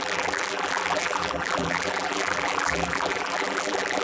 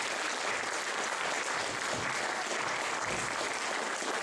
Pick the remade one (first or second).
first